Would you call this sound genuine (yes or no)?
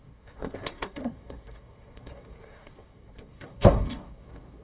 no